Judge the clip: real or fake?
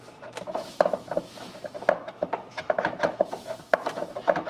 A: fake